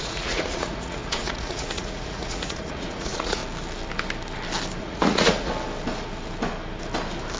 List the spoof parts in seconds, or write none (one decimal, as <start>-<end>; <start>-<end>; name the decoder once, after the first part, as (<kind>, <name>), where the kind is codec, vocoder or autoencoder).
0.0-3.4 (vocoder, Vocos); 4.8-5.5